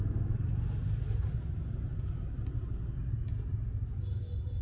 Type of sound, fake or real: real